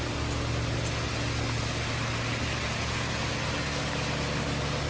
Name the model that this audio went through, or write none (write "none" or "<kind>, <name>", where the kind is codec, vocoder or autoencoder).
none